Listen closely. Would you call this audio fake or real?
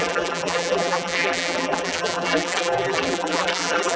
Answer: fake